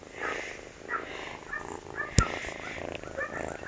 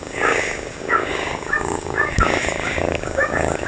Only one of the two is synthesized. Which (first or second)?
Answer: second